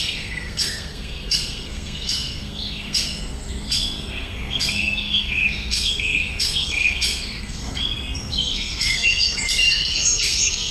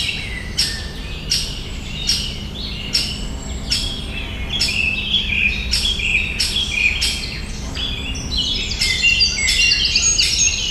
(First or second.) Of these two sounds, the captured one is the second